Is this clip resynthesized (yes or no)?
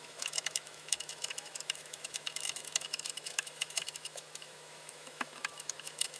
yes